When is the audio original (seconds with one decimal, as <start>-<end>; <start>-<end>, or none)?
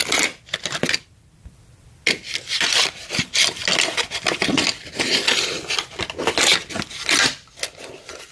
0.0-8.3